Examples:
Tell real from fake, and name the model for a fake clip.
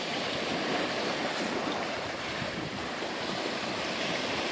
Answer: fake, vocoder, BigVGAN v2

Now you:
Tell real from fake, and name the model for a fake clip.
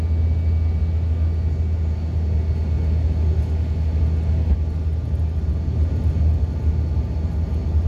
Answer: real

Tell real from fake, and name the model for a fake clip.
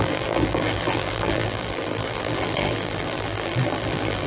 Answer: fake, vocoder, BigVGAN v2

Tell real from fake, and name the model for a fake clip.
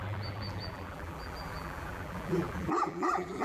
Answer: fake, vocoder, BigVGAN v2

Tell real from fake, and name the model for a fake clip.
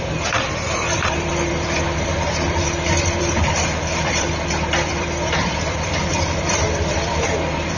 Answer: fake, vocoder, BigVGAN v2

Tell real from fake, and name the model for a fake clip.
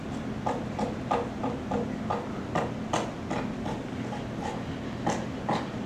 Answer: real